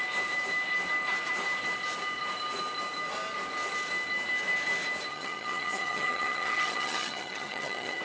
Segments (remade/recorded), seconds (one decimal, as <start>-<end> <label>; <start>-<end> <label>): 0.0-5.1 recorded; 5.1-8.0 remade